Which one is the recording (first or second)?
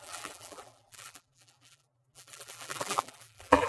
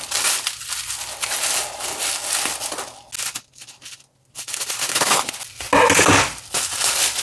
second